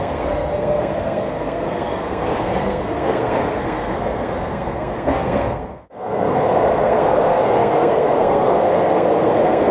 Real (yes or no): no